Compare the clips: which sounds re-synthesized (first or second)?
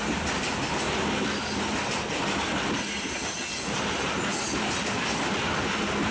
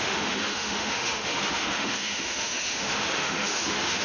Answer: second